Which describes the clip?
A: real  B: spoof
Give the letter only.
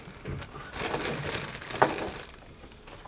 A